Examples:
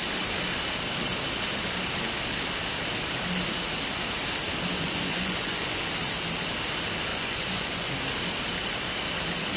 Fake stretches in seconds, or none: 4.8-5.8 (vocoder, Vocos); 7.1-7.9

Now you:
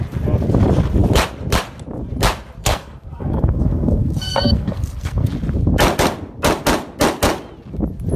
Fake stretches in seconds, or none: 2.6-5.3 (codec, SNAC)

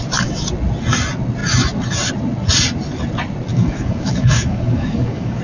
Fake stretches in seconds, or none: 3.5-5.4 (codec, DAC)

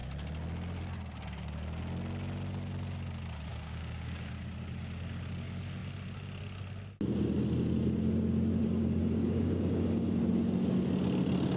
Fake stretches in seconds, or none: 3.5-4.3 (codec, DAC); 8.6-10.1

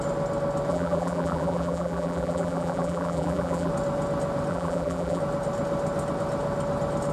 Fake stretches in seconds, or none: 0.7-3.7 (vocoder, BigVGAN v2); 4.5-5.2

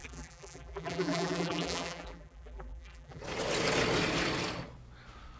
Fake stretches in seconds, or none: 0.0-3.2 (vocoder, BigVGAN v2)

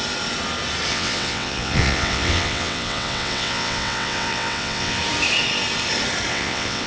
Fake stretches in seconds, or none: 0.9-5.0 (vocoder, WaveNeXt); 6.3-6.9

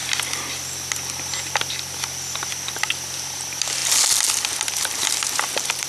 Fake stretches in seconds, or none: none